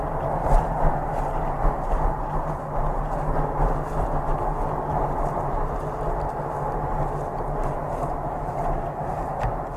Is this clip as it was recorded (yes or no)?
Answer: no